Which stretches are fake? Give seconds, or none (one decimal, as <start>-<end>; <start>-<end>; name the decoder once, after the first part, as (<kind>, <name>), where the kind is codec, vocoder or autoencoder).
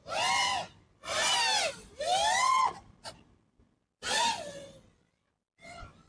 none